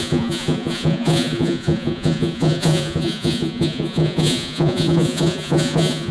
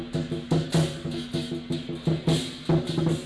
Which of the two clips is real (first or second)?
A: second